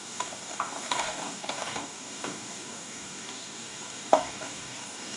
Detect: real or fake fake